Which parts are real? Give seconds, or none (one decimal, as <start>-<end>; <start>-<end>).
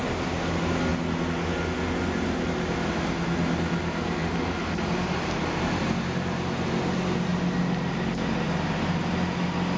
0.0-4.2; 5.8-9.8